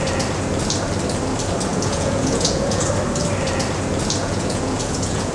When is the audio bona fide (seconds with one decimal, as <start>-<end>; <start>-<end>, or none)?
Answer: 0.0-1.7; 2.9-4.2